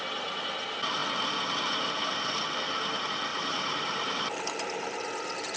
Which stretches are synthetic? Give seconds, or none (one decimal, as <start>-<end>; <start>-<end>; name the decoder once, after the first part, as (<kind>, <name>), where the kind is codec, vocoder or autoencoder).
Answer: 3.3-5.6 (vocoder, BigVGAN v2)